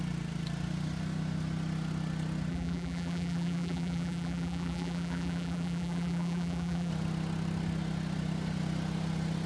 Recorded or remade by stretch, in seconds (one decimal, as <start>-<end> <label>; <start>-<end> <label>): 0.0-2.5 recorded; 2.5-6.9 remade; 6.9-9.5 recorded